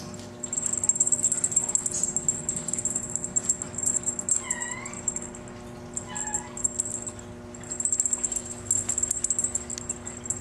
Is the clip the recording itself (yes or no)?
yes